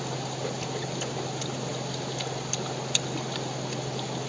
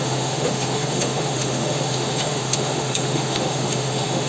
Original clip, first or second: first